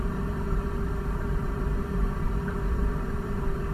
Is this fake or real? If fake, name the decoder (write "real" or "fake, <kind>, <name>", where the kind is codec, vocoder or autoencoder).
fake, vocoder, BigVGAN v2